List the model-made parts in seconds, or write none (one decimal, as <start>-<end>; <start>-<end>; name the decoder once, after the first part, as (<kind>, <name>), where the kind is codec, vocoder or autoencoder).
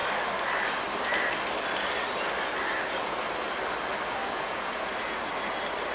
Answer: 4.2-4.9 (vocoder, Vocos)